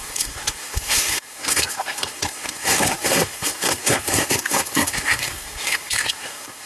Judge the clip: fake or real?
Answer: fake